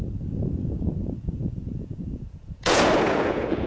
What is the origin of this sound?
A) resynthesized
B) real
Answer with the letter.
A